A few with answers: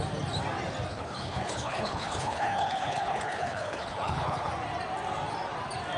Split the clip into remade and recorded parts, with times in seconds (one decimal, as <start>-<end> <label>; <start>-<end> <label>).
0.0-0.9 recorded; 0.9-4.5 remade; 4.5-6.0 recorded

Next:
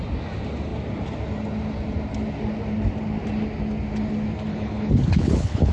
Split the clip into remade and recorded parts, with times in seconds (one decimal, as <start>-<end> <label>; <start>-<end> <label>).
0.0-4.5 recorded; 4.5-5.7 remade

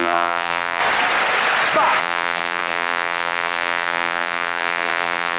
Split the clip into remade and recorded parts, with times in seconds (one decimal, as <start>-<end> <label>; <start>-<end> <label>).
0.0-0.8 remade; 0.8-2.0 recorded; 2.0-5.4 remade